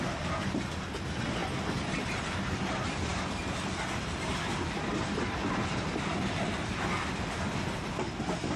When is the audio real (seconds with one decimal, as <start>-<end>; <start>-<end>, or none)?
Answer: 0.0-8.6